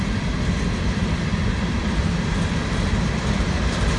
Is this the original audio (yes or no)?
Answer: yes